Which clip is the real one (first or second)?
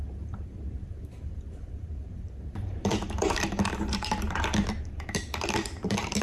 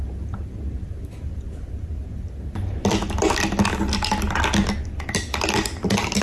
second